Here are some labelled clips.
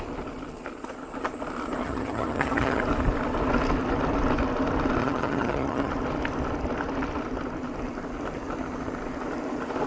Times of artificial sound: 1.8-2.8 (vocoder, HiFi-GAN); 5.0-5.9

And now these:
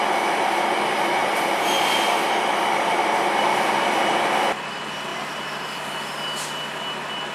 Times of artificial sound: 1.2-4.2 (vocoder, BigVGAN v2)

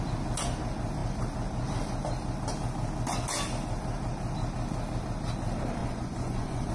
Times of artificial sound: 5.8-6.7 (vocoder, Vocos)

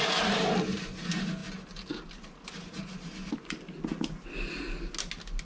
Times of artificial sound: none

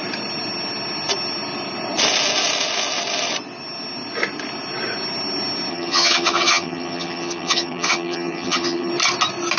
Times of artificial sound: 5.7-8.9 (vocoder, HiFi-GAN)

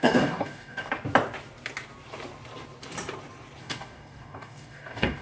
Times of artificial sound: 0.0-0.9 (codec, DAC); 3.6-5.2

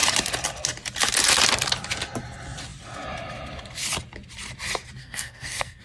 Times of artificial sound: 5.0-5.8 (codec, SNAC)

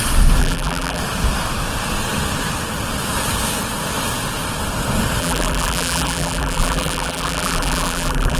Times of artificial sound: 0.4-1.0 (vocoder, BigVGAN v2); 5.2-8.4